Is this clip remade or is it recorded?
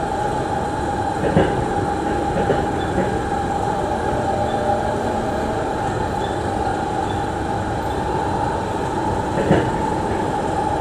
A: recorded